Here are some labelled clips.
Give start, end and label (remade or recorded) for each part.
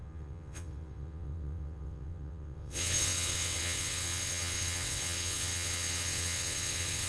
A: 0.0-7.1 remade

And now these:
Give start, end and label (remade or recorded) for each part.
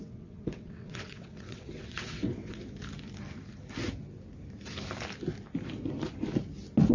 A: 0.0-2.6 remade; 2.6-6.9 recorded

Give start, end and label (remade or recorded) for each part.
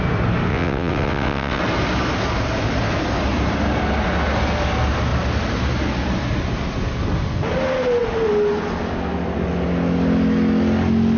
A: 0.0-0.5 recorded; 0.5-1.6 remade; 1.6-11.2 recorded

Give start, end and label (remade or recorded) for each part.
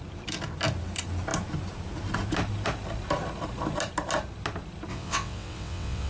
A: 0.0-4.9 recorded; 4.9-6.1 remade